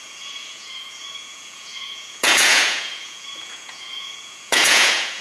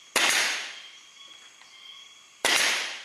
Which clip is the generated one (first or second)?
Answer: first